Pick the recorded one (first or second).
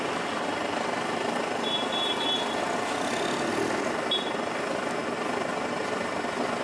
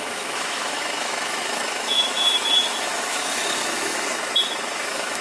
first